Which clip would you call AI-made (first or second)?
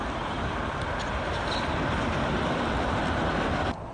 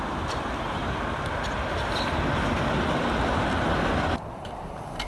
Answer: first